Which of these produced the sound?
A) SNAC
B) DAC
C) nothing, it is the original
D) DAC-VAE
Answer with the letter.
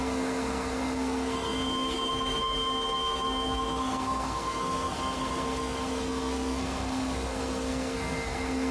A